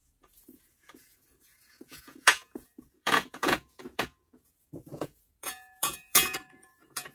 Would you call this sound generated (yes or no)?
yes